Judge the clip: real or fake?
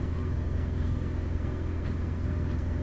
fake